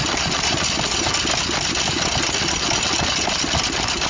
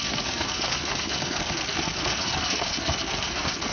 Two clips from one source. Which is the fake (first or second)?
second